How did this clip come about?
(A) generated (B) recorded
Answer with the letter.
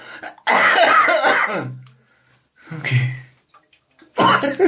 B